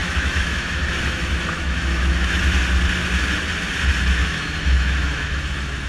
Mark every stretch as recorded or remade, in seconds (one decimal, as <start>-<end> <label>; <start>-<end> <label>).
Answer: 0.0-2.4 remade; 2.4-4.2 recorded; 4.2-5.9 remade